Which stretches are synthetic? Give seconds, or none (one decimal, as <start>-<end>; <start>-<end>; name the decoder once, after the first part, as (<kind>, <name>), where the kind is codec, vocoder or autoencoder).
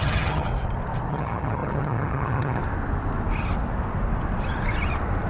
0.0-0.5 (vocoder, HiFi-GAN); 1.1-2.6